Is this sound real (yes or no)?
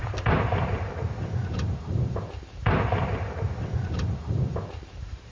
no